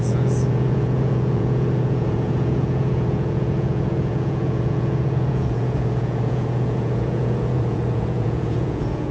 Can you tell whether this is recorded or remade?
remade